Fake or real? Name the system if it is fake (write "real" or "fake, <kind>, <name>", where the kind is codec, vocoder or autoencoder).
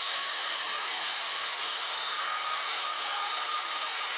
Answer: fake, autoencoder, DAC-VAE